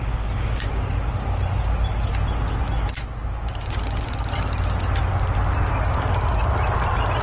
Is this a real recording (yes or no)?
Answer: yes